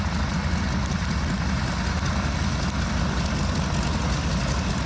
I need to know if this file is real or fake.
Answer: real